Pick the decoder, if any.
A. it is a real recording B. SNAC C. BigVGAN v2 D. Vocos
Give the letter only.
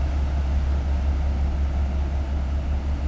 A